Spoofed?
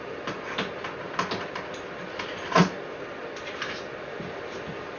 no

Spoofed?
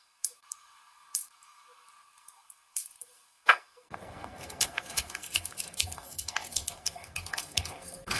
yes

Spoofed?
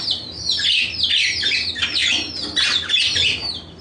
no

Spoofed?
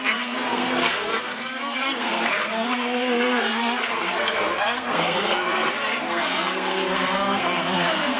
yes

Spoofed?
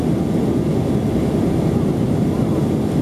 no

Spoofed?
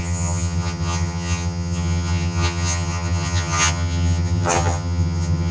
yes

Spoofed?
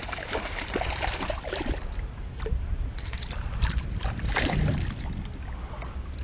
yes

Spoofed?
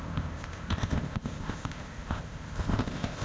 yes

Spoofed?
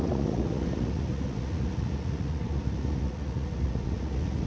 yes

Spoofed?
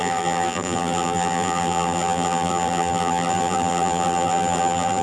yes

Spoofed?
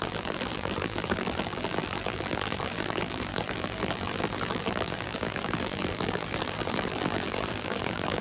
yes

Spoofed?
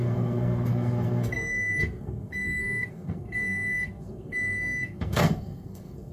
yes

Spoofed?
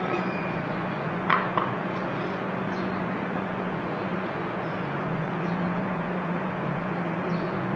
yes